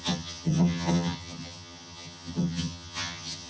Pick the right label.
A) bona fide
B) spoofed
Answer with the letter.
B